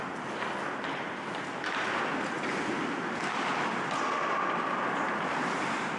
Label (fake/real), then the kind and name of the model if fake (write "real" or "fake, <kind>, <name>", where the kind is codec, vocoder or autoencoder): real